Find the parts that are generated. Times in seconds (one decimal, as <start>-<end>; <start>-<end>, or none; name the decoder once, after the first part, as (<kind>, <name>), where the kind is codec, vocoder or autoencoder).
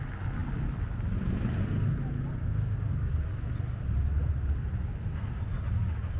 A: 2.4-3.1 (codec, DAC)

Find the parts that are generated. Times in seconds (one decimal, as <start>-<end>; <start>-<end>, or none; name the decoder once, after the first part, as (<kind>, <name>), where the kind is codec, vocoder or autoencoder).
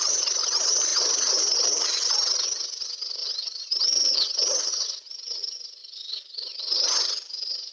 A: 0.9-1.5 (vocoder, BigVGAN v2); 3.2-4.7; 5.8-7.7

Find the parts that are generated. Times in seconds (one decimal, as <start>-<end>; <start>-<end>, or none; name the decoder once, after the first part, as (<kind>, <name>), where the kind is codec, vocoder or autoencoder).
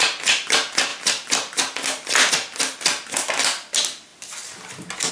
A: none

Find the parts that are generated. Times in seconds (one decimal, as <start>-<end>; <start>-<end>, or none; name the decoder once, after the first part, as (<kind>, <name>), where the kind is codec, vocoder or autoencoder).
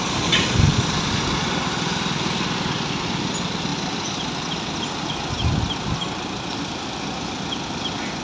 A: none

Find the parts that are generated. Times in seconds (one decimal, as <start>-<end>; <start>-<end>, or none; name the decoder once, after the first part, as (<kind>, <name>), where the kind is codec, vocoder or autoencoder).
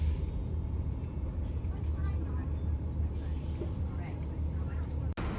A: 0.4-1.7 (vocoder, Vocos)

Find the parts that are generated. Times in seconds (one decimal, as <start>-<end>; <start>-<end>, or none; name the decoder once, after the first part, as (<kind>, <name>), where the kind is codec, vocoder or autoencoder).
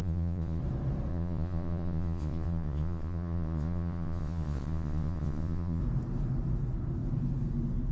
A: 0.0-0.6 (vocoder, Vocos); 1.1-5.8